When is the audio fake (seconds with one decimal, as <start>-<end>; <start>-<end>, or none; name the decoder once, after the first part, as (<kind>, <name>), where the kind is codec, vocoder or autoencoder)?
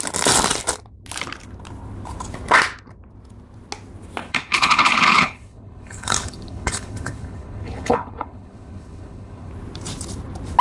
4.2-9.5 (codec, HILCodec)